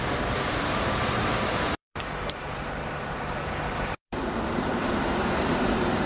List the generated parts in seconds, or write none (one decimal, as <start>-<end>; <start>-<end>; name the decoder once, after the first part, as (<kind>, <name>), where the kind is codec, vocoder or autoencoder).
0.0-6.1 (vocoder, BigVGAN v2)